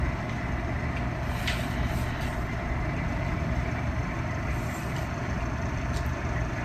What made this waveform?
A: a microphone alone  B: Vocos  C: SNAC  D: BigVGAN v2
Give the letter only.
D